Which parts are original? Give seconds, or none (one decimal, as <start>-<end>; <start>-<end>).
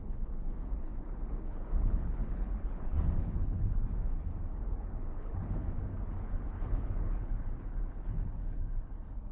none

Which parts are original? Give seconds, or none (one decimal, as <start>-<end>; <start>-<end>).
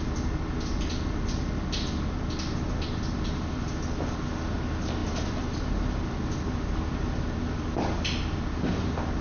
0.0-9.2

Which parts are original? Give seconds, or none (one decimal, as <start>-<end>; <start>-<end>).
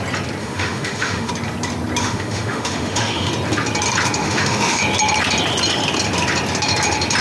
0.0-0.4; 1.3-2.0; 3.3-4.2; 4.8-7.2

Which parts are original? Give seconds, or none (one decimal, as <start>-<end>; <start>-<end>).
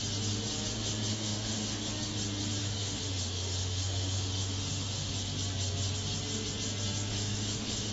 0.0-1.1; 1.9-2.6; 5.1-7.1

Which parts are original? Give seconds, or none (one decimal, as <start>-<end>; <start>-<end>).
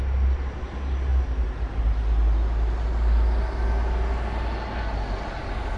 0.0-5.8